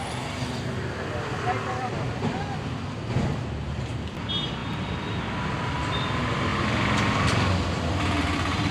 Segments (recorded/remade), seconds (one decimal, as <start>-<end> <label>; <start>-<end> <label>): 0.0-8.7 recorded